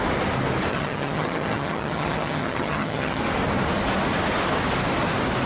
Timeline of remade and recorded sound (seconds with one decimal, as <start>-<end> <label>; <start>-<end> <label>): 0.0-0.7 recorded; 0.7-3.2 remade; 3.2-5.5 recorded